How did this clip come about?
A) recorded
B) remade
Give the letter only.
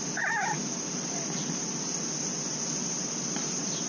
A